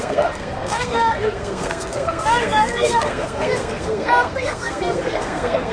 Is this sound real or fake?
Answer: fake